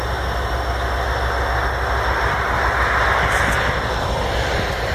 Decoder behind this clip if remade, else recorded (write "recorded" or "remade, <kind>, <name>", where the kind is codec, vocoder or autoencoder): recorded